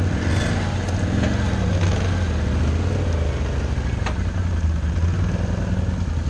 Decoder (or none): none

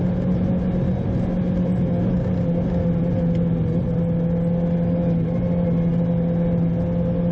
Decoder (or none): none